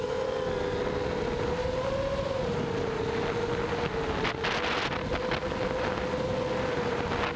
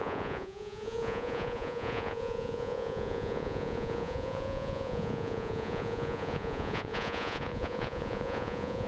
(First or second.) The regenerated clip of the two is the second